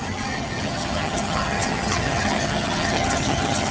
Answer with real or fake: fake